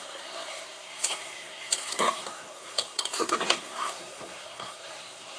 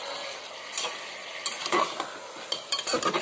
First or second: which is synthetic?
first